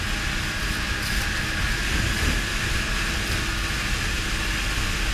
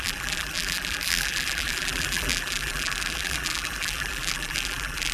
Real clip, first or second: first